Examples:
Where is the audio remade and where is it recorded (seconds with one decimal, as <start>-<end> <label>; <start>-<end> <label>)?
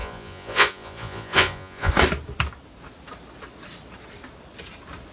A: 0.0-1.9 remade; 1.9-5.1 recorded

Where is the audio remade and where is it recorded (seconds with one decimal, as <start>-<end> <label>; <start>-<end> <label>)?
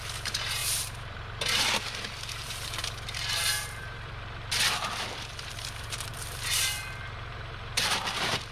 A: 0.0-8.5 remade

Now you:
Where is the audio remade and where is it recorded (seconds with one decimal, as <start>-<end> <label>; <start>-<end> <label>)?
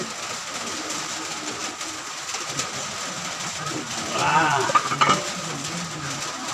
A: 0.0-4.2 recorded; 4.2-5.0 remade; 5.0-6.5 recorded